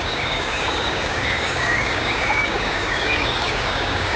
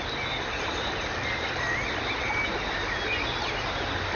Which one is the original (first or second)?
second